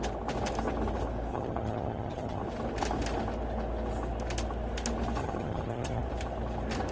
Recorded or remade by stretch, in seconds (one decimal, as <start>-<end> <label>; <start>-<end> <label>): 0.0-1.3 recorded; 1.3-2.4 remade; 2.4-5.2 recorded; 5.2-6.0 remade; 6.0-6.9 recorded